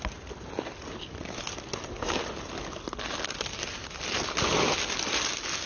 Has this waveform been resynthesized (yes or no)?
no